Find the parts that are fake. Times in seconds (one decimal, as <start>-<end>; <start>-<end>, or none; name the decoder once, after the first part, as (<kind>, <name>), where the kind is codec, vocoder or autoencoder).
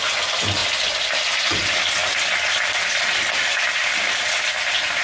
none